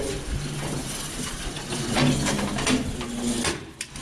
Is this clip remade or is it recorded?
recorded